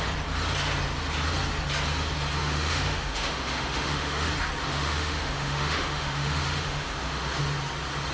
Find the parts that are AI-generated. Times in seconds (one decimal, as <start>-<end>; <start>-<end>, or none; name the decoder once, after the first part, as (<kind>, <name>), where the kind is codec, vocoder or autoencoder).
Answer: 2.4-4.3 (autoencoder, DAC-VAE); 4.7-7.4